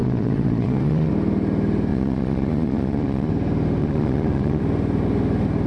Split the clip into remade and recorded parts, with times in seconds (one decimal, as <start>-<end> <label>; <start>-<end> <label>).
0.0-1.1 remade; 1.1-1.9 recorded; 1.9-3.3 remade; 3.3-3.8 recorded; 3.8-4.6 remade; 4.6-5.7 recorded